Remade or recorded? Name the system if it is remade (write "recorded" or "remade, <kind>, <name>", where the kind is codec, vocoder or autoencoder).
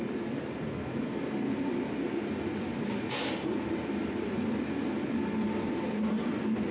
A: recorded